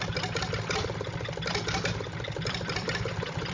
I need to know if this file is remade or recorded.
remade